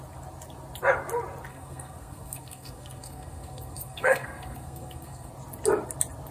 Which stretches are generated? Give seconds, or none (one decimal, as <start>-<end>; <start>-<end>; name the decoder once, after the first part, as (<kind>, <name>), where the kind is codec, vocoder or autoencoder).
1.5-5.3 (codec, SNAC)